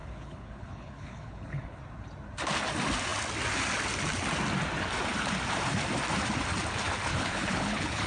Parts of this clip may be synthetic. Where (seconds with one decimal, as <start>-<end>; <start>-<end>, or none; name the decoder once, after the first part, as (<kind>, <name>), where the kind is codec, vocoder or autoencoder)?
0.0-1.8 (codec, HILCodec); 7.1-8.1